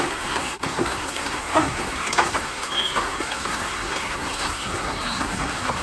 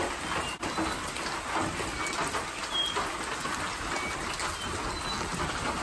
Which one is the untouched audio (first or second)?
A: second